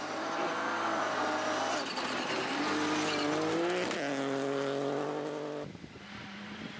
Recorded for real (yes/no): yes